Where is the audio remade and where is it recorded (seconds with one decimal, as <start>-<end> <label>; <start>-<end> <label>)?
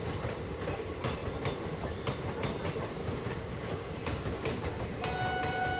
0.0-3.0 recorded; 3.0-4.8 remade; 4.8-5.8 recorded